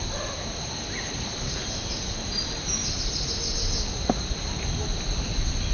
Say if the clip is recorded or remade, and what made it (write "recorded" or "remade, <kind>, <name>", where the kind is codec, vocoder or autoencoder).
recorded